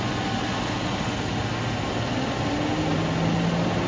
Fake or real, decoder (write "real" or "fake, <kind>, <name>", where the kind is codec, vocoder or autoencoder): real